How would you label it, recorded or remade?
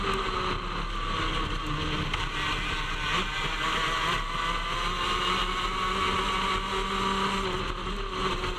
recorded